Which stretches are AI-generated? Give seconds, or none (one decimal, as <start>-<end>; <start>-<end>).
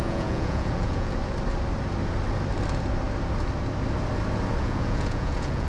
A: 0.0-1.2; 4.6-5.7